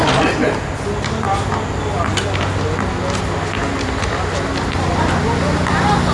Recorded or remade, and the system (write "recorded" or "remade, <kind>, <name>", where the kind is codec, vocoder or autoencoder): recorded